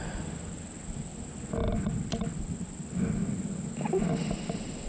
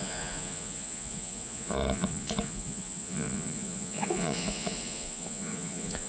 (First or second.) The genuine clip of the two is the first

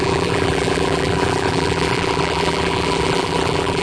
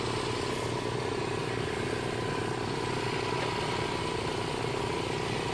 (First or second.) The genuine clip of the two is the second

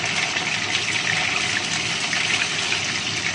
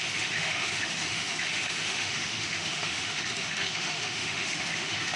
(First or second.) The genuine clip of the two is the first